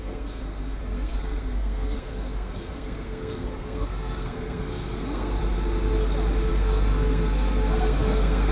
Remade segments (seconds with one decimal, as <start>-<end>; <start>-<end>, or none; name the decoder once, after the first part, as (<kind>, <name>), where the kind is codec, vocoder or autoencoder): 0.0-5.4 (codec, SNAC); 6.5-8.5